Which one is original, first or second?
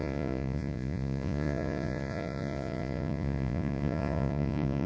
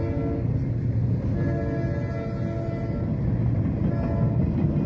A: second